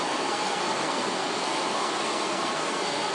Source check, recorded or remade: remade